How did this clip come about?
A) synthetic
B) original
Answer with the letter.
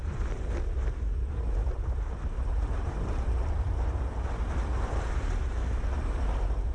A